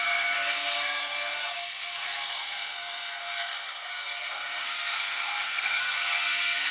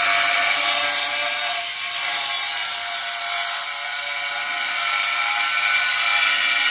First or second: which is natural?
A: second